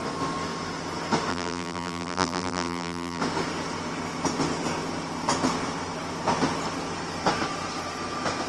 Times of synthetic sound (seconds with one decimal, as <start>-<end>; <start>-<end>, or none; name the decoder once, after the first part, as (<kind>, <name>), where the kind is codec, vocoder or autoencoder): 1.3-3.2 (vocoder, BigVGAN v2)